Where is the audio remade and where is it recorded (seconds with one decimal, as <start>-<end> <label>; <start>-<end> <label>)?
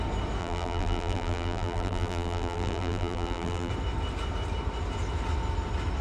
0.0-0.4 recorded; 0.4-3.7 remade; 3.7-6.0 recorded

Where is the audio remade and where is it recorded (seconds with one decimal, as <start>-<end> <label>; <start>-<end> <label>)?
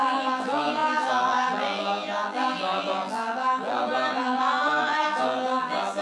0.0-6.0 remade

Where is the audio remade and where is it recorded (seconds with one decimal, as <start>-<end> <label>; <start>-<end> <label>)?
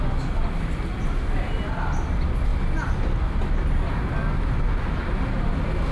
0.0-5.9 recorded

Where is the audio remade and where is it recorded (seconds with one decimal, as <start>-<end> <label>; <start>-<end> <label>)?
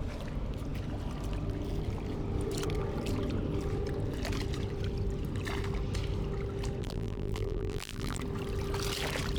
0.0-6.8 recorded; 6.8-8.2 remade; 8.2-9.4 recorded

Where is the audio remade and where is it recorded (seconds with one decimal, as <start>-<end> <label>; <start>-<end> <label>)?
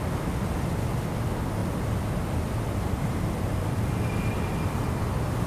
0.0-5.5 recorded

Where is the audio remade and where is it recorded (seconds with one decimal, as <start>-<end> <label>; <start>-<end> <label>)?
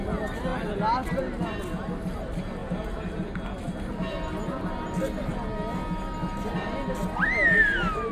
0.0-8.1 recorded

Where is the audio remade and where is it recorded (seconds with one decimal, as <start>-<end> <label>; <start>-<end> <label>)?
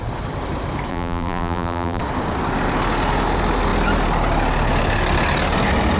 0.0-0.9 recorded; 0.9-2.0 remade; 2.0-6.0 recorded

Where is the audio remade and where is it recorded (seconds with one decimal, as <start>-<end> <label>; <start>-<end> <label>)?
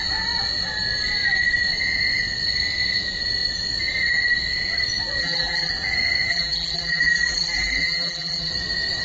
0.0-5.2 recorded; 5.2-5.7 remade; 5.7-6.3 recorded; 6.3-8.5 remade; 8.5-9.0 recorded